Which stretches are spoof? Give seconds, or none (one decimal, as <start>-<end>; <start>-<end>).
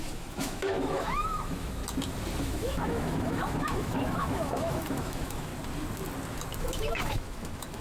0.0-1.8; 2.4-5.5; 6.6-7.8